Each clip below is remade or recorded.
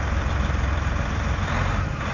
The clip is remade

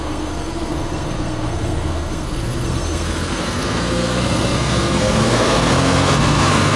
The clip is remade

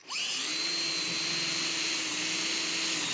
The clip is recorded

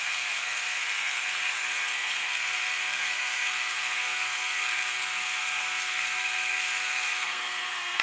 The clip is remade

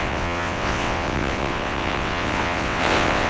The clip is remade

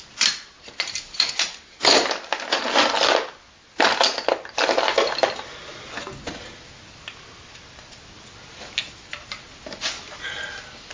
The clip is recorded